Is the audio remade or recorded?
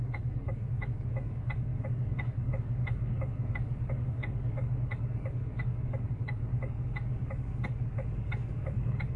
remade